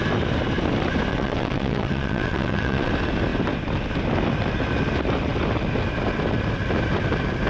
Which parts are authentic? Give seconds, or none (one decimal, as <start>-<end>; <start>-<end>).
0.0-1.1; 2.9-7.5